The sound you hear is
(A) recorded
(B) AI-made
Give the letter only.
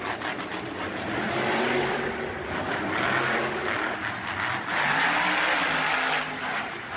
A